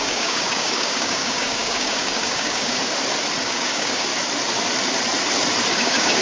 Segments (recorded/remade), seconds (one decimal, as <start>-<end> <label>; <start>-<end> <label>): 0.0-2.8 remade; 2.8-3.4 recorded; 3.4-4.1 remade; 4.1-5.7 recorded; 5.7-6.2 remade